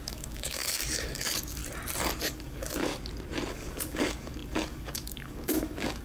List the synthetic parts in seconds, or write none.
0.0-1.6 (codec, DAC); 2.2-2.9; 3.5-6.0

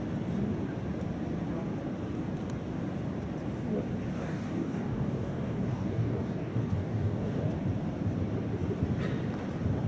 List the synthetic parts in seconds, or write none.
4.1-7.4 (codec, DAC)

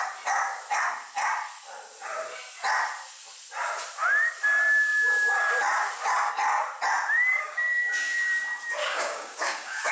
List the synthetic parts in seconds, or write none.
7.3-8.3 (codec, DAC); 8.8-9.9

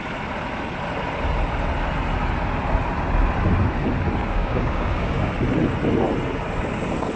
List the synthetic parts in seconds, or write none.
4.2-5.3 (codec, DAC)

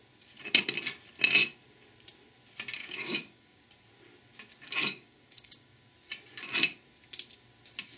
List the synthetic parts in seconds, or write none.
2.8-3.6 (codec, DAC); 4.8-5.9

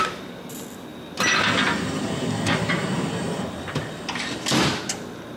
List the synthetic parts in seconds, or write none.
none

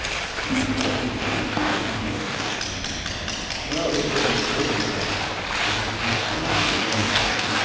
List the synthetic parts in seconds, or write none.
1.2-2.6 (codec, DAC); 6.1-7.6

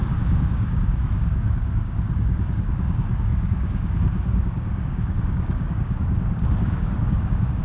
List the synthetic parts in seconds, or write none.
0.0-7.6 (codec, DAC)